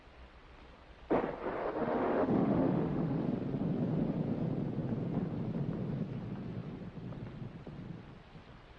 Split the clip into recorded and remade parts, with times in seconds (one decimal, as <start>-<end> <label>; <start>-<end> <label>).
0.0-1.6 recorded; 1.6-3.2 remade; 3.2-8.8 recorded